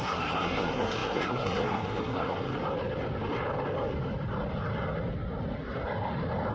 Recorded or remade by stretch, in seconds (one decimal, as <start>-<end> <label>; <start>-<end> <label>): 0.0-2.5 remade; 2.5-6.5 recorded